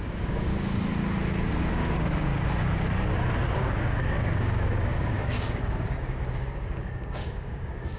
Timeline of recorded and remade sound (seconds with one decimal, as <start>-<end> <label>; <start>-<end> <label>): 0.0-0.5 remade; 0.5-1.7 recorded; 1.7-2.3 remade; 2.3-3.6 recorded; 3.6-8.0 remade